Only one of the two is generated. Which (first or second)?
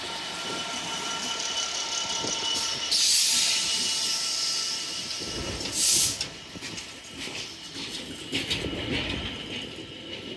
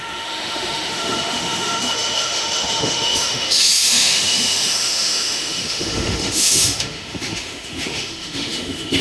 second